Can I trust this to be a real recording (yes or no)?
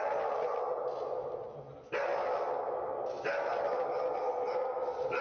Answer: yes